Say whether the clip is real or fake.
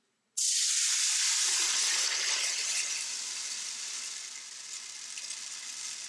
real